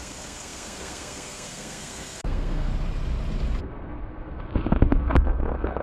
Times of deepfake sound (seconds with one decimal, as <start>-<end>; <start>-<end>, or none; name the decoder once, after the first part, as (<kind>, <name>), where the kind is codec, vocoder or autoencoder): 0.0-2.7 (codec, SNAC); 3.6-5.8